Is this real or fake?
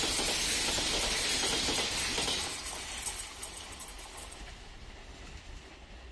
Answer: real